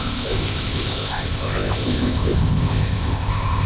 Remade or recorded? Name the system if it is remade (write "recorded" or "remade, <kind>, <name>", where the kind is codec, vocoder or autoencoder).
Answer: remade, codec, ZipCodec